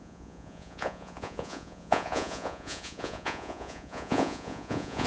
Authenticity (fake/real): fake